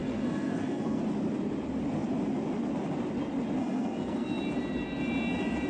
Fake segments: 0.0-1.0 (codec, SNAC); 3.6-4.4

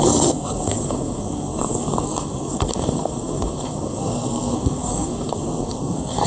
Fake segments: 0.0-6.3 (codec, SNAC)